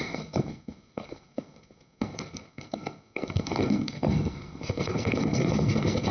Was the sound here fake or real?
fake